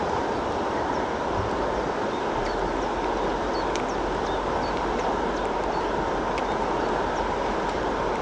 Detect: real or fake real